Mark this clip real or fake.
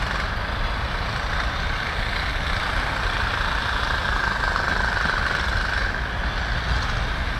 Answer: real